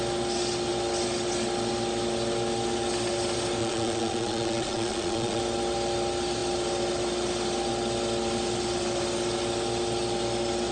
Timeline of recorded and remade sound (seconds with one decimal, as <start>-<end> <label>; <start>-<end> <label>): 0.0-3.6 recorded; 3.6-5.4 remade; 5.4-10.7 recorded